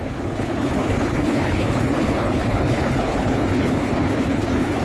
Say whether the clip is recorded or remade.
remade